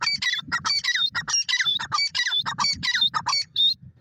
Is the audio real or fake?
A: fake